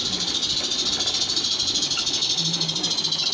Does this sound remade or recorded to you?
recorded